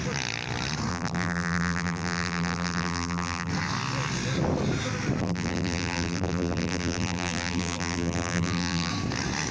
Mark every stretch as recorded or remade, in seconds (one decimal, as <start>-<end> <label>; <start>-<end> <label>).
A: 0.0-0.9 recorded; 0.9-3.5 remade; 3.5-5.2 recorded; 5.2-8.9 remade; 8.9-9.5 recorded